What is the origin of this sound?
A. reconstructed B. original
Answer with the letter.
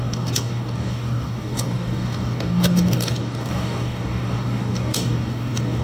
A